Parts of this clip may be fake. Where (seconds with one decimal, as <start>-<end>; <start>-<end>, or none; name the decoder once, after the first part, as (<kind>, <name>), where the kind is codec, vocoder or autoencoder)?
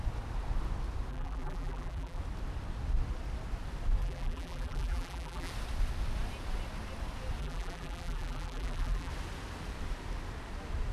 1.1-2.2 (vocoder, BigVGAN v2); 4.0-5.5; 7.4-9.1